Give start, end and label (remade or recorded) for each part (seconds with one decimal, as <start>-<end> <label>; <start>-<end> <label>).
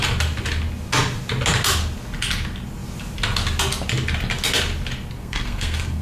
0.0-5.2 recorded; 5.2-6.0 remade